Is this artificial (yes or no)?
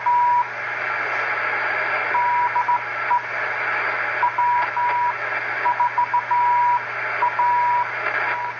no